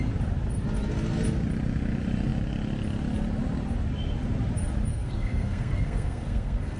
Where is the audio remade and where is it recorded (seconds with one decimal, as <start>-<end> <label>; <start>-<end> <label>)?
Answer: 0.0-4.9 recorded; 4.9-6.8 remade